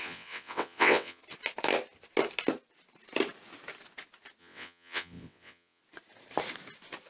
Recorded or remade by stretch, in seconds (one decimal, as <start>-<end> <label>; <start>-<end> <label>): 0.0-1.2 remade; 1.2-4.4 recorded; 4.4-5.8 remade; 5.8-7.1 recorded